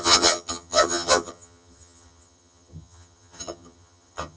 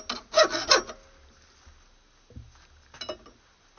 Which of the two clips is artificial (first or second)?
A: first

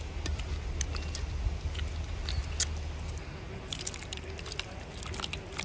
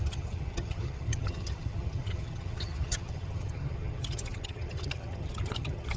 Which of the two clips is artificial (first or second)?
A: second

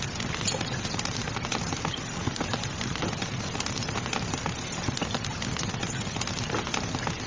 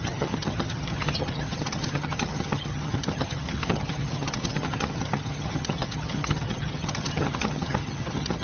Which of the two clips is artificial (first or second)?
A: second